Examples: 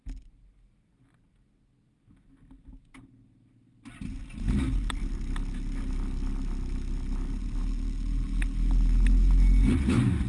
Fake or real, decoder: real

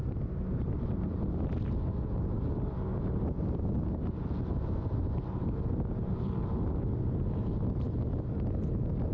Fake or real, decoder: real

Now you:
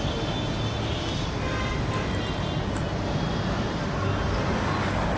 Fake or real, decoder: real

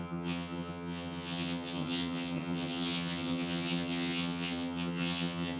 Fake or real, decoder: fake, vocoder, HiFi-GAN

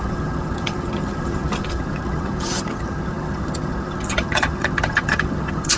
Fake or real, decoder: fake, vocoder, HiFi-GAN